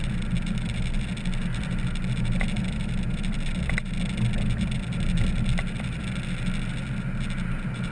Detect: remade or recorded recorded